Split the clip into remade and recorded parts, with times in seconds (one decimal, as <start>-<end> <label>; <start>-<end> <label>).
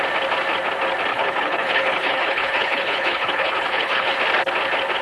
0.0-1.1 recorded; 1.1-4.1 remade; 4.1-5.0 recorded